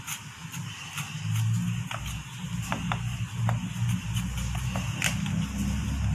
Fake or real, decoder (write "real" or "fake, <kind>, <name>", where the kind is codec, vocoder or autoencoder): real